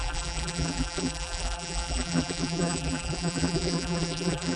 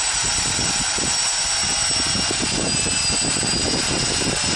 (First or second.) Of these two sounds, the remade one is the first